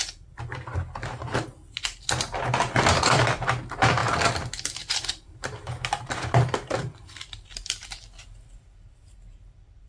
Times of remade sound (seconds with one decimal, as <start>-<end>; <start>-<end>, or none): 0.0-1.3; 3.0-4.0; 5.1-9.9